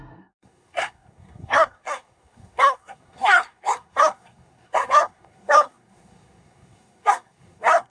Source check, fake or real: fake